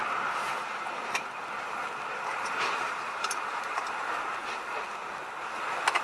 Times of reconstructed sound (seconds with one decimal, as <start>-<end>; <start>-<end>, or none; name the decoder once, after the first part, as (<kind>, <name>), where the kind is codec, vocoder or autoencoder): 0.0-1.4 (vocoder, BigVGAN v2); 2.3-4.6